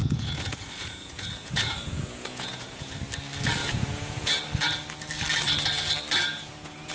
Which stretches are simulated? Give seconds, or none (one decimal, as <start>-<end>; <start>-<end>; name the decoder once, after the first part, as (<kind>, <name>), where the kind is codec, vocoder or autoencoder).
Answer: 0.0-2.9 (vocoder, Vocos); 3.6-4.3; 6.3-6.9